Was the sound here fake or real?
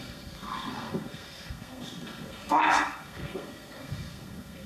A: fake